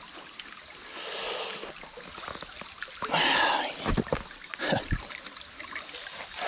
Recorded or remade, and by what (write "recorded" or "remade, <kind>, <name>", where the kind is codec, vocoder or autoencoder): recorded